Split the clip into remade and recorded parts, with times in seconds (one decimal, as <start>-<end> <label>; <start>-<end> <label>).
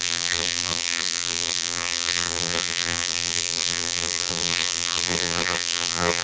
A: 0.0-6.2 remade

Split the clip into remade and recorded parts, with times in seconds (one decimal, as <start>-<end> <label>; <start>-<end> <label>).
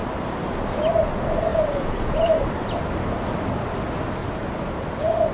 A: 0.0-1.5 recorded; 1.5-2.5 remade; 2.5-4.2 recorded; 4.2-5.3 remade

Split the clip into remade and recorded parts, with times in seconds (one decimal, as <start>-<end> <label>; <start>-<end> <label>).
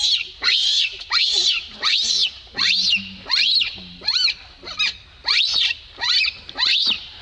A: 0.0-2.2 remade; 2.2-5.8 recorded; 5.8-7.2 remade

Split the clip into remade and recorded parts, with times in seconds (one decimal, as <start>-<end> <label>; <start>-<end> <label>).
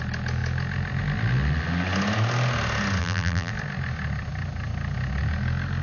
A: 0.0-3.0 recorded; 3.0-3.5 remade; 3.5-5.8 recorded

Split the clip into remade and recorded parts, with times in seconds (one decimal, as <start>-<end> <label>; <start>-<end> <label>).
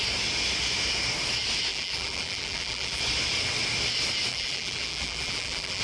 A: 0.0-1.7 recorded; 1.7-3.0 remade; 3.0-4.3 recorded; 4.3-5.8 remade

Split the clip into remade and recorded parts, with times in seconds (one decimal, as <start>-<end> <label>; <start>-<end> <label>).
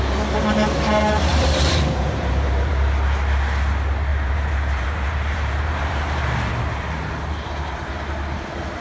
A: 0.0-1.3 recorded; 1.3-2.7 remade; 2.7-4.1 recorded; 4.1-6.5 remade; 6.5-8.8 recorded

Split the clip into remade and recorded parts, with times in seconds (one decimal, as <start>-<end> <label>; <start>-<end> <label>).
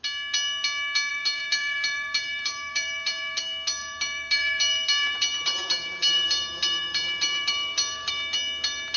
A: 0.0-1.1 recorded; 1.1-3.4 remade; 3.4-3.8 recorded; 3.8-8.1 remade; 8.1-9.0 recorded